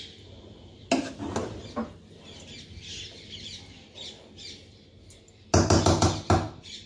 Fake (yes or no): no